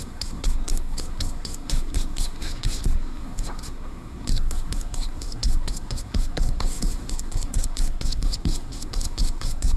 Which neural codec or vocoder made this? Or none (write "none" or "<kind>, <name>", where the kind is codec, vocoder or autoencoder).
codec, SNAC